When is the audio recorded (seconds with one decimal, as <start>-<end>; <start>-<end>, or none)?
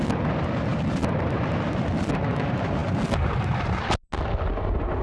0.0-5.0